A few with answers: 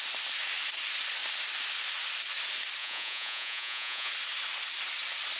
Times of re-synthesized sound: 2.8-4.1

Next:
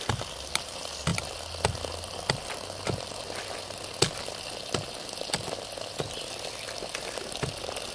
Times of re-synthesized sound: none

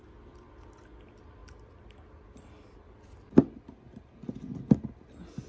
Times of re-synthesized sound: none

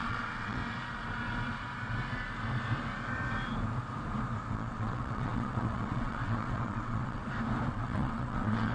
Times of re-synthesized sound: 0.0-0.6; 4.5-7.2; 7.7-8.7

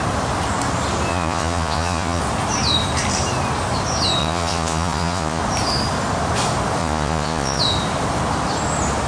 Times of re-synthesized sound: 1.1-2.2; 4.2-5.4; 6.8-7.6

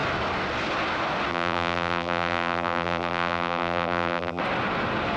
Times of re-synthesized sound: 1.3-4.4

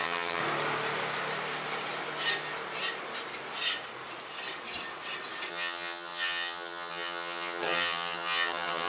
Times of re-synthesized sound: 0.0-0.4; 5.5-8.9

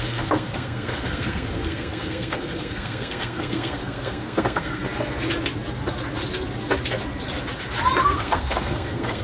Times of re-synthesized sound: 0.0-4.8; 8.0-9.2